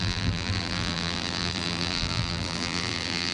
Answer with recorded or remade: remade